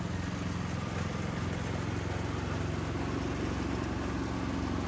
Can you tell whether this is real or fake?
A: real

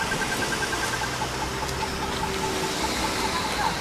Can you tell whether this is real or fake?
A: real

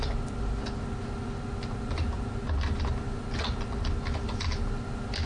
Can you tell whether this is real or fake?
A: real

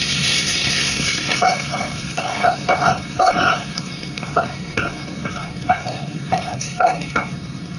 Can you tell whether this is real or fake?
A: fake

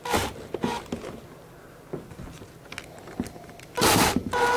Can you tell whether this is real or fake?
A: real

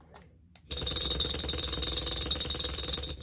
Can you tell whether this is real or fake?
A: real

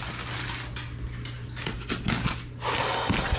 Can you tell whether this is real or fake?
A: real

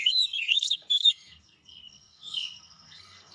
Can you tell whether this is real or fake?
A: fake